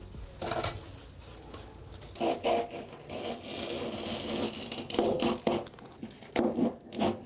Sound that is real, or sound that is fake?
real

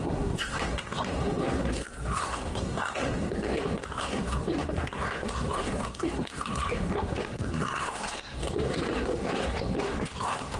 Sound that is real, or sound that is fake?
fake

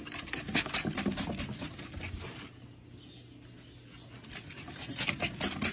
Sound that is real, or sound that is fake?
real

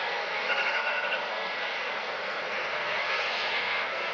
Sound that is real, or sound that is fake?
fake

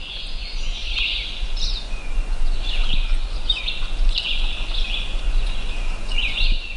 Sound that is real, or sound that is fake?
fake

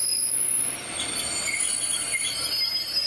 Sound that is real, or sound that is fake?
real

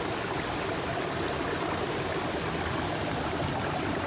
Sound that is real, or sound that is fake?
real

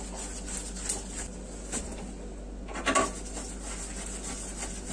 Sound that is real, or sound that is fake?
real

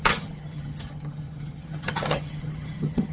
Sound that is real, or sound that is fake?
fake